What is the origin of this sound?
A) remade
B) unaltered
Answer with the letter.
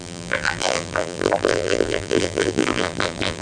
A